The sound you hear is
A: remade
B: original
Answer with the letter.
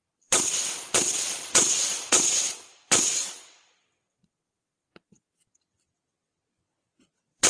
A